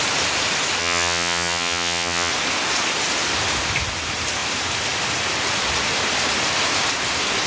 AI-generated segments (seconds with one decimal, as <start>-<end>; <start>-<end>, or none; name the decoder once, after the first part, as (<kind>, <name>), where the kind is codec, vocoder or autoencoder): 0.8-2.3 (vocoder, HiFi-GAN)